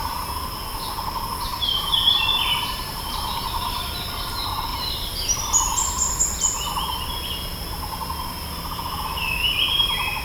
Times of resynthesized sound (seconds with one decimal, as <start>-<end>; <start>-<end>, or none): 1.5-4.1; 4.7-6.2